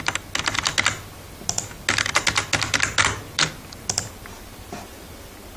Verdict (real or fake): real